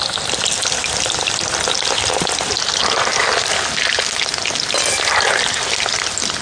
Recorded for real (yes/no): yes